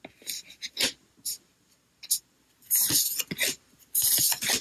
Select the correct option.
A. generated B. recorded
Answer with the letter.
B